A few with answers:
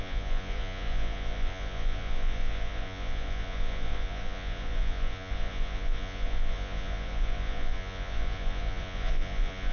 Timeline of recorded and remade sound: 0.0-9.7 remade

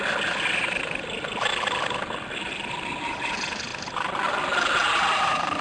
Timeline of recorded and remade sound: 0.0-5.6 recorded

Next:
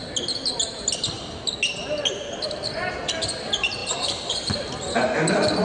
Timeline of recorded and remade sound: 0.0-5.6 recorded